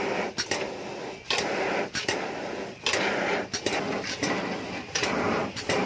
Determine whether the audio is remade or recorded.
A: recorded